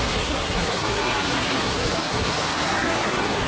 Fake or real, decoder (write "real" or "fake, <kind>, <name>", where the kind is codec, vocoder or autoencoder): fake, codec, SNAC